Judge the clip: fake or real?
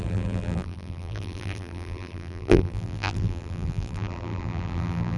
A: fake